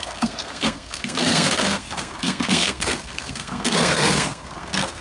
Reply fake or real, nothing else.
fake